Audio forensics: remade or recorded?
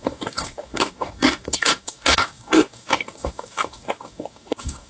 remade